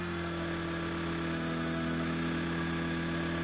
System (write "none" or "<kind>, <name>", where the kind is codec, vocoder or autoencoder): autoencoder, DAC-VAE